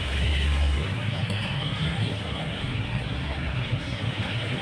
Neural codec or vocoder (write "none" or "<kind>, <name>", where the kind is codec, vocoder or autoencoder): codec, SNAC